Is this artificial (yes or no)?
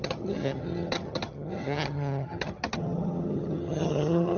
yes